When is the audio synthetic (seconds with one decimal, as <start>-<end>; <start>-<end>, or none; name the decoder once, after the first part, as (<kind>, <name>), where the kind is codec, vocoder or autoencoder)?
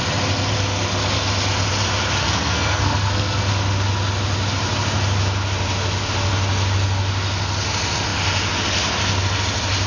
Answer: 2.2-3.5 (codec, SNAC)